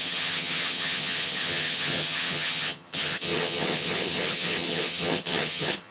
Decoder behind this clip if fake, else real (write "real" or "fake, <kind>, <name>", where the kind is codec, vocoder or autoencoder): fake, vocoder, HiFi-GAN